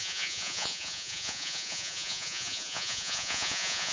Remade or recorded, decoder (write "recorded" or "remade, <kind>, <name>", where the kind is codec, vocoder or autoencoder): remade, vocoder, Vocos